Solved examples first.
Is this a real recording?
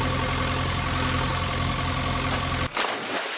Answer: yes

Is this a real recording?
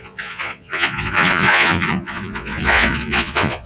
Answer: no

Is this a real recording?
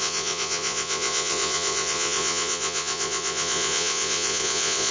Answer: no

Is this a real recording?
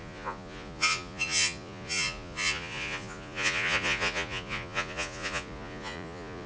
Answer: no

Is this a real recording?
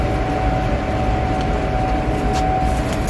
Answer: yes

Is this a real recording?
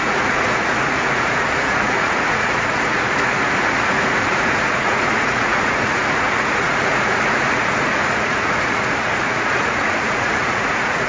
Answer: no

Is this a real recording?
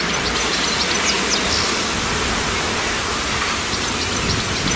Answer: yes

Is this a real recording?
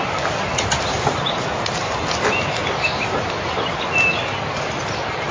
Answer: yes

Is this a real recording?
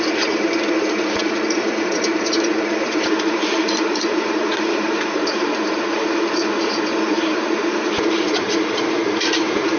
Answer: no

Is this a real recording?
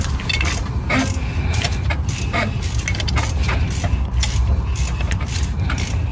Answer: yes